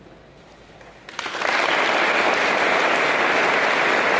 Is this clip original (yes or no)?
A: yes